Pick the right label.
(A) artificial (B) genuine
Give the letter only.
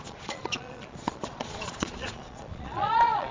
A